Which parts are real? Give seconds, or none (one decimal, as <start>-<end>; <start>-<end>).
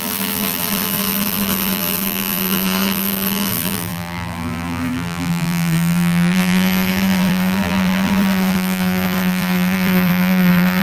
none